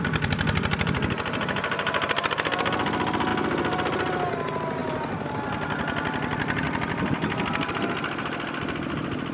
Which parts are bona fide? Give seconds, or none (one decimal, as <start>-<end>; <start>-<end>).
0.0-9.3